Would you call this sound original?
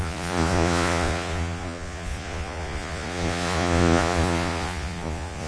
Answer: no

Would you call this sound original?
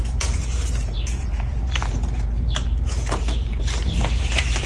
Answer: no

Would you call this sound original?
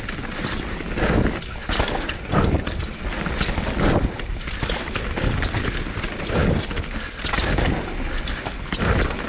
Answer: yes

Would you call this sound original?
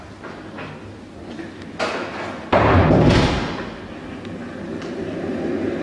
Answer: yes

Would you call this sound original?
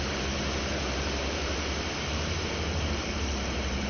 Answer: no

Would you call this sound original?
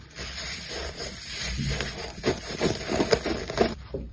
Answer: no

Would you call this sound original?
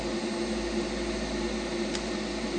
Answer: yes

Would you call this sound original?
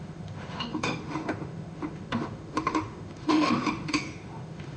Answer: no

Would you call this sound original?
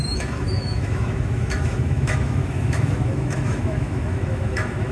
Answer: no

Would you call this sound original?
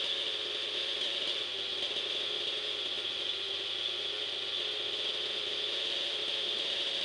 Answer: yes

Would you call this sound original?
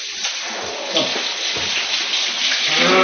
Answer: yes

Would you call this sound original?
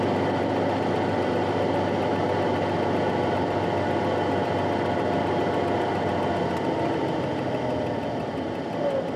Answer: yes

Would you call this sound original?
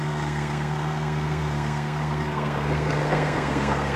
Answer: no